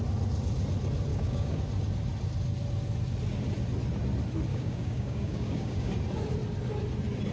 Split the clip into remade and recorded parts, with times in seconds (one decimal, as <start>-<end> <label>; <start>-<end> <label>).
0.0-1.1 recorded; 1.1-1.6 remade; 1.6-4.5 recorded; 4.5-5.9 remade; 5.9-7.3 recorded